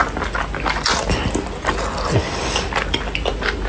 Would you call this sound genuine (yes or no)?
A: yes